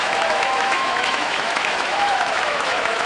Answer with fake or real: fake